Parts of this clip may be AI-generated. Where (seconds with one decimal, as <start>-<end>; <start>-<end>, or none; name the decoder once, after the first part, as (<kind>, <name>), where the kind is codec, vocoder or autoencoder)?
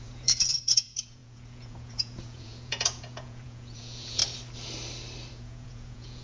0.0-4.2 (vocoder, Vocos); 5.3-6.2